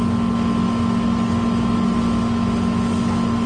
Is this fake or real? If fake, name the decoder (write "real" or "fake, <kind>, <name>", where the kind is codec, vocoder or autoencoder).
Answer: real